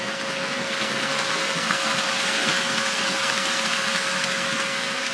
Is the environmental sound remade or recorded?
remade